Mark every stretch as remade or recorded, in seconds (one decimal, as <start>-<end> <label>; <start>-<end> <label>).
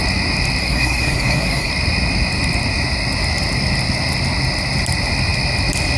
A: 0.0-0.6 recorded; 0.6-1.7 remade; 1.7-6.0 recorded